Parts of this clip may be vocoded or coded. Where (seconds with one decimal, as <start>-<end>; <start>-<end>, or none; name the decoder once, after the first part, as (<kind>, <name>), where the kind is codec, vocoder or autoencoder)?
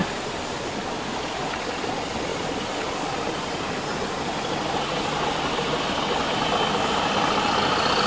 none